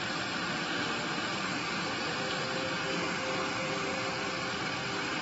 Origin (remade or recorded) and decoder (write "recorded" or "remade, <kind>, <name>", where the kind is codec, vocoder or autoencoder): recorded